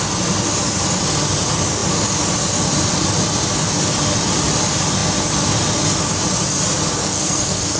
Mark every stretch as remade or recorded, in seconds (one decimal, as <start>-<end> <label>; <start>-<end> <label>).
0.0-7.0 recorded; 7.0-7.8 remade